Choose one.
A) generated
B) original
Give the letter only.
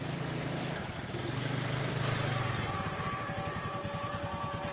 A